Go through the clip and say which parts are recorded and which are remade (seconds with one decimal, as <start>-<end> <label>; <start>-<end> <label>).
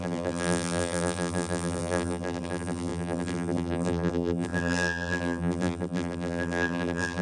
0.0-7.2 remade